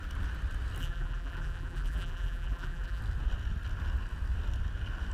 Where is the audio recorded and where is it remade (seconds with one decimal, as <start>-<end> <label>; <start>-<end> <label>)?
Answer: 0.0-0.8 recorded; 0.8-3.0 remade; 3.0-5.1 recorded